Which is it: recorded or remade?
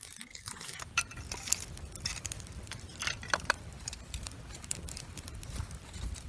remade